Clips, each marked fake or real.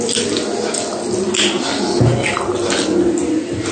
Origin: real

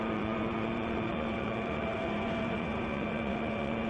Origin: fake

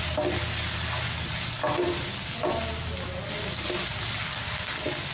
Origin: real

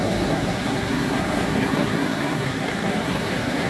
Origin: fake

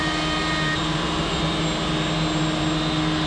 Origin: real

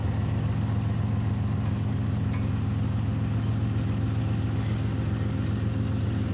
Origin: real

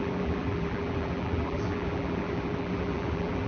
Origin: fake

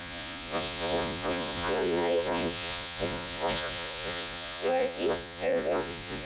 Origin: fake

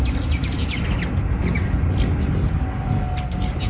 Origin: real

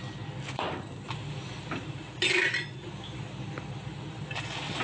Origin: real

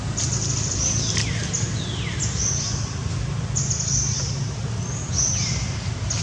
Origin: real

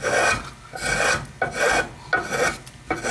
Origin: real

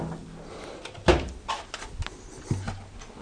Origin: real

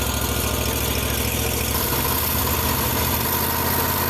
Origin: real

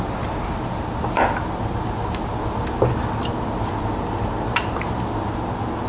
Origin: real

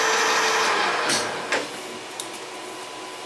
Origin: real